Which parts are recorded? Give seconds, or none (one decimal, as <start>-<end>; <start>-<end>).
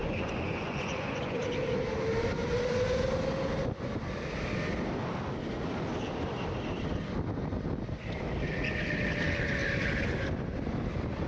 1.4-11.3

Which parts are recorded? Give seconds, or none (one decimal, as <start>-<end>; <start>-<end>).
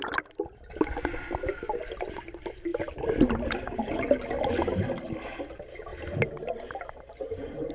0.0-7.7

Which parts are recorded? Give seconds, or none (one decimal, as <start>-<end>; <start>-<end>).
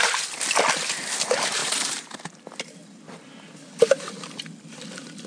0.0-1.6; 2.2-5.3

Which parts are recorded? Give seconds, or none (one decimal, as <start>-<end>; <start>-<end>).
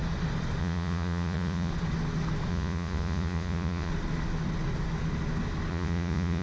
0.0-0.6; 1.7-2.5; 3.9-5.7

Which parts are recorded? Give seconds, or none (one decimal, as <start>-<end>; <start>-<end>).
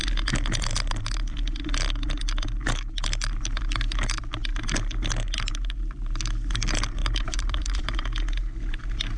0.0-7.0; 7.9-9.2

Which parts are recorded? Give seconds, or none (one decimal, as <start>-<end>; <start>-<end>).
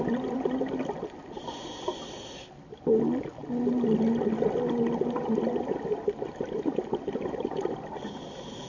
0.0-8.7